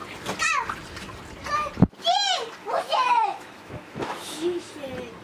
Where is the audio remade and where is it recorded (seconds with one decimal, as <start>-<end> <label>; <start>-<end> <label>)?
0.0-2.6 recorded; 2.6-4.7 remade; 4.7-5.2 recorded